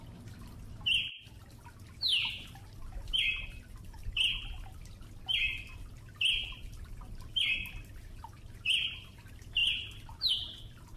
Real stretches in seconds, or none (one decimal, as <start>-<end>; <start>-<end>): 0.0-11.0

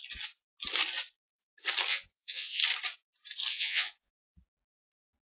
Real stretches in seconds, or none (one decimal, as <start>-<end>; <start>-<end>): 0.0-1.9; 2.6-3.5; 4.3-5.3

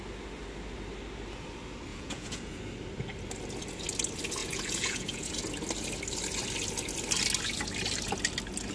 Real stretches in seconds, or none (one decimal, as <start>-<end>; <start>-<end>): 0.0-1.9; 2.6-4.4; 5.3-8.7

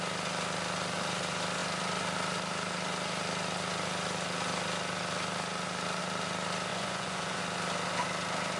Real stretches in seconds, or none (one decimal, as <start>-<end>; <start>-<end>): 0.0-6.7; 7.4-8.6

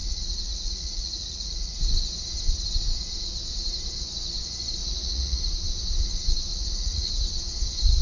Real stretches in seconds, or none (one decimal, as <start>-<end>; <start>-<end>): 1.8-4.8; 5.4-6.5; 7.1-8.0